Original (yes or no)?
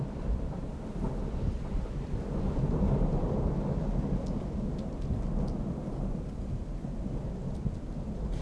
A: yes